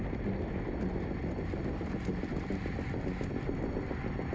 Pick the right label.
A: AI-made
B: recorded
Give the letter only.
B